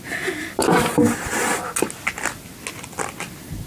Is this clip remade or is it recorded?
recorded